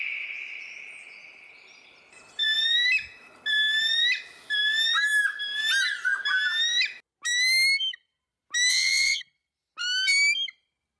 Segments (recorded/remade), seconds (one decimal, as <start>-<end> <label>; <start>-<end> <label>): 0.0-8.7 recorded; 8.7-9.2 remade; 9.2-11.0 recorded